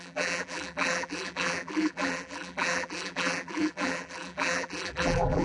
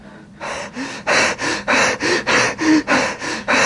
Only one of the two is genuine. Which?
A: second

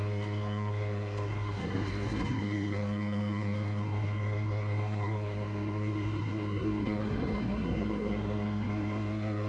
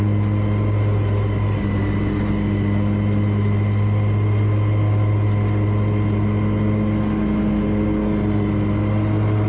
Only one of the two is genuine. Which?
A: second